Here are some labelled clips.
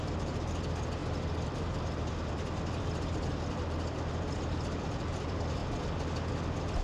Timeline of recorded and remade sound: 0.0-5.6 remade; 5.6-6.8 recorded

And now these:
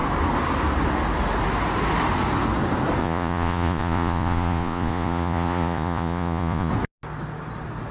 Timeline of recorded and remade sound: 0.0-3.0 recorded; 3.0-6.7 remade; 6.7-7.9 recorded